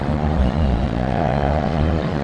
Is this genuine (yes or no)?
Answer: no